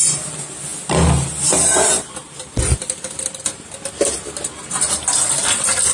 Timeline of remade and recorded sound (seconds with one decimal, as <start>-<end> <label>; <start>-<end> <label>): 0.0-5.9 recorded